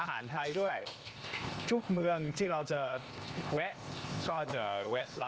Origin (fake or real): fake